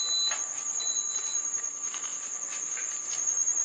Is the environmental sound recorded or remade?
recorded